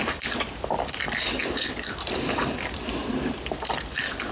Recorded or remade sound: recorded